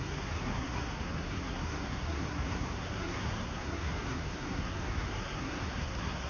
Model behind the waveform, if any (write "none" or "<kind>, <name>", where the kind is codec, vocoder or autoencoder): codec, SNAC